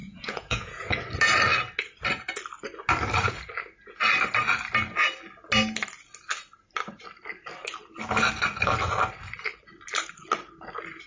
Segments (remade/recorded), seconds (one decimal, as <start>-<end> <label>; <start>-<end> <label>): 0.0-0.8 remade; 0.8-11.1 recorded